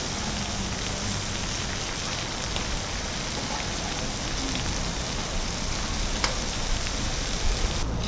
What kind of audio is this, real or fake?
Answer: real